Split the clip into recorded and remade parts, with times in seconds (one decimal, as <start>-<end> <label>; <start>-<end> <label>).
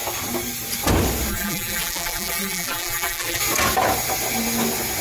0.0-1.3 recorded; 1.3-3.4 remade; 3.4-5.0 recorded